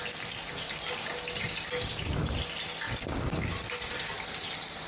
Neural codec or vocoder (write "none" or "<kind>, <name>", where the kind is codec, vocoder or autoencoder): none